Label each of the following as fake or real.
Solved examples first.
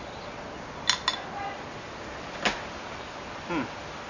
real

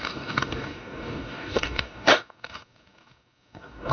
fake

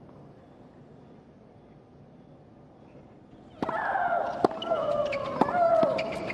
real